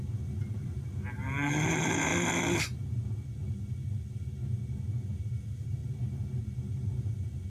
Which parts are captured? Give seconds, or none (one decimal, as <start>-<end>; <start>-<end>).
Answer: 2.1-4.9; 5.8-6.4